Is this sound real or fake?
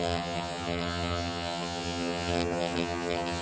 fake